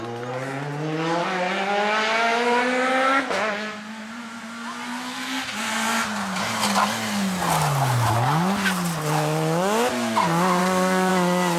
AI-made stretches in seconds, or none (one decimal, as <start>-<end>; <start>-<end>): 10.6-11.1